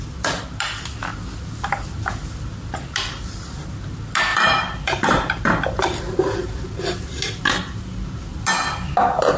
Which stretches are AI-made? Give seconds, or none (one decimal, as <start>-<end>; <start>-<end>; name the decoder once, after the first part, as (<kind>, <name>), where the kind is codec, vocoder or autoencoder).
4.3-6.6 (vocoder, BigVGAN v2)